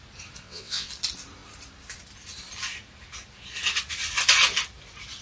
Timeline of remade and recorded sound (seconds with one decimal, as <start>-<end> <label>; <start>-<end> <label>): 0.0-0.4 recorded; 0.4-0.9 remade; 0.9-5.2 recorded